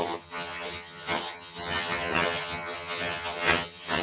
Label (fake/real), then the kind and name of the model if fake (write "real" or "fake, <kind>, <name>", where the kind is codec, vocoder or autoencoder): fake, vocoder, HiFi-GAN